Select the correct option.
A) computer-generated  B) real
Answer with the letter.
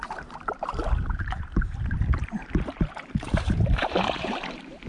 A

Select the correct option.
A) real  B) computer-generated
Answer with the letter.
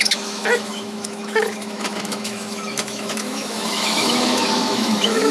B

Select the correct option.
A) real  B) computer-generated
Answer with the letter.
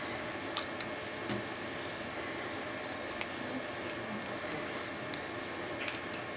A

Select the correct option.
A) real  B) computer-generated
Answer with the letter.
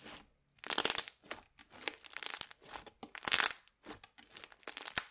A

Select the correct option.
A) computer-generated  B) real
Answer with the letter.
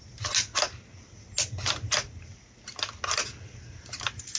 B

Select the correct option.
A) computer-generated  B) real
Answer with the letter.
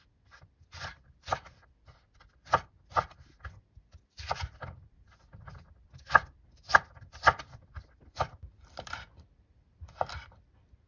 A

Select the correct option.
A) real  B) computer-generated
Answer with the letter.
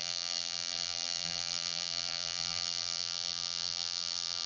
B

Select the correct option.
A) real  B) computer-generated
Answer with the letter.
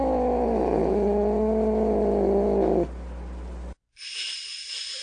A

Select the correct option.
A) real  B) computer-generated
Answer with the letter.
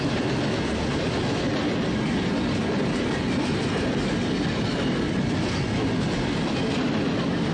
A